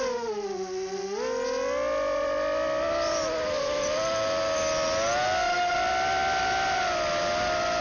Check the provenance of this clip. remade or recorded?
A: recorded